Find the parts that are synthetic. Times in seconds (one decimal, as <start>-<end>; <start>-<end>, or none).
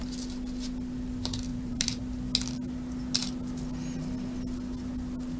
1.5-2.0